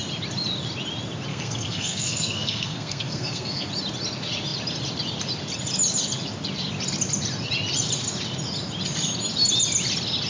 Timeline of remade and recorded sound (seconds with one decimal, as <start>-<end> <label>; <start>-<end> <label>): 0.0-1.3 recorded; 1.3-3.7 remade; 3.7-10.3 recorded